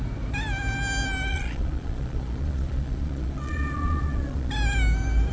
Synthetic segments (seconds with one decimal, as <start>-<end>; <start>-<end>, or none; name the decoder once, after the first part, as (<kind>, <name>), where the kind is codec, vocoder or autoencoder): 1.3-4.5 (vocoder, Vocos)